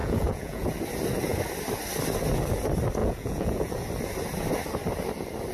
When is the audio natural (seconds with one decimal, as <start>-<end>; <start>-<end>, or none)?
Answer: 0.7-3.0; 3.9-5.5